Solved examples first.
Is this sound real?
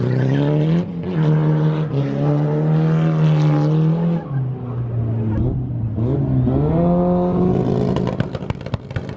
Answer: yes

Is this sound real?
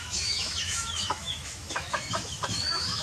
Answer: no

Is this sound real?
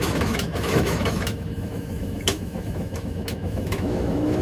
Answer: no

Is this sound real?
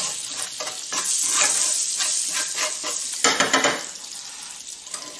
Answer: yes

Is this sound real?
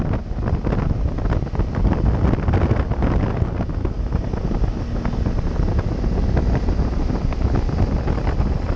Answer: yes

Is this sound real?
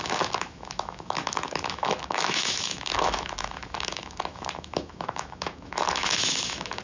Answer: no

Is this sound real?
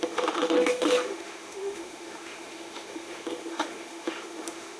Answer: no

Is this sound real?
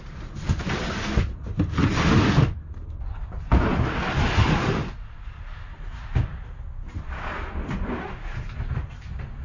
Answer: yes